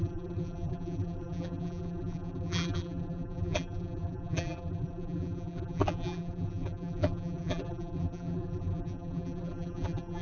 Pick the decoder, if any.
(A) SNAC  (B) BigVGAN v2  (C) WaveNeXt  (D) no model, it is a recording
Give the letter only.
B